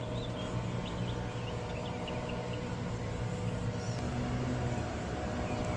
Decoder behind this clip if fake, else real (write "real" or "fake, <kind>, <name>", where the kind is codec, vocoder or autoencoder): real